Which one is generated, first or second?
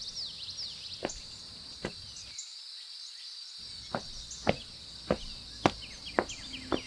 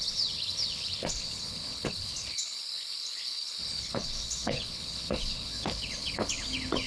second